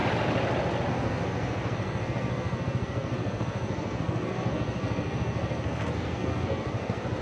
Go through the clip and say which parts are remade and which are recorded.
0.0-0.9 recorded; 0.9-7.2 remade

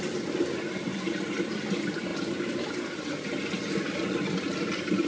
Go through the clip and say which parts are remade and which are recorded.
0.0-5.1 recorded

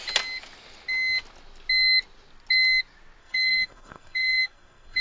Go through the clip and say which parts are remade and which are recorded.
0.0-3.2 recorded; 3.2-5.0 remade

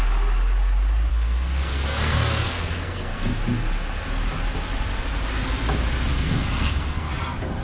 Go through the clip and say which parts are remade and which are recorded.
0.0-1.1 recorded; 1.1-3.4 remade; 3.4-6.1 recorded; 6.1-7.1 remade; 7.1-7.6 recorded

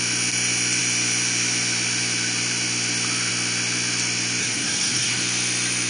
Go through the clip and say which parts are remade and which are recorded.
0.0-4.4 recorded; 4.4-5.2 remade; 5.2-5.9 recorded